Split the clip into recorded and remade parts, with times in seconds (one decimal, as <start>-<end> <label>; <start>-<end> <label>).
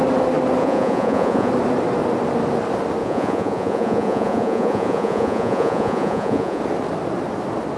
0.0-0.6 recorded; 0.6-1.5 remade; 1.5-3.0 recorded; 3.0-6.6 remade; 6.6-7.8 recorded